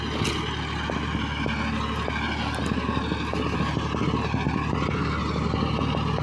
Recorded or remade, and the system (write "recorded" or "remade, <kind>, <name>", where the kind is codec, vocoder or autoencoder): recorded